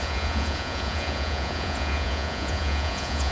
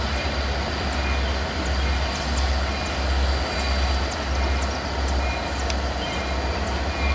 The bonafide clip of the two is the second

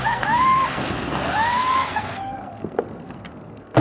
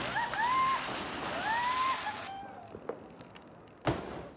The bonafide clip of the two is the second